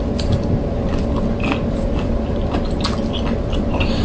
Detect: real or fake real